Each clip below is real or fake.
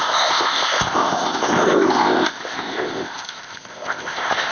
fake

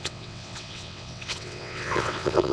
fake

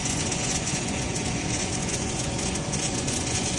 fake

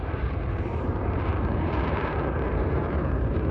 fake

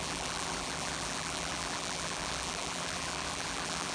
fake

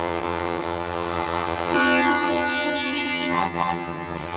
fake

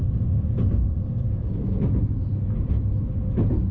real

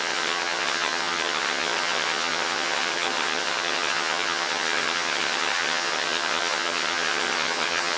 fake